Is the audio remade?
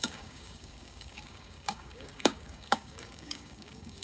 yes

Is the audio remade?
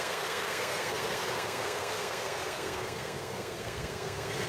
yes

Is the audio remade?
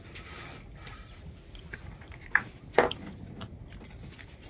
no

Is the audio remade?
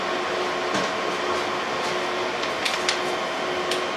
no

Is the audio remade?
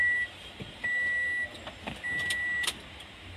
no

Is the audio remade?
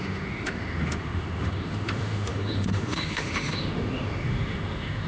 yes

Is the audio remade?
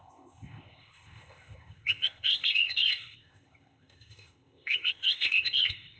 yes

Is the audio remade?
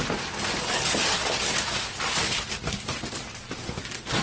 no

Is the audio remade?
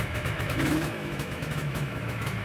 yes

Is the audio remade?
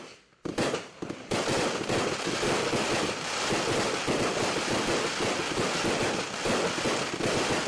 no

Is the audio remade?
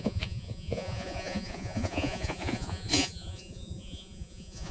yes